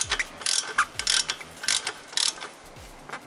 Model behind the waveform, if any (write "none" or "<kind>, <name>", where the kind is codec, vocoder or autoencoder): none